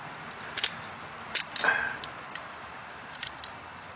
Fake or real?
real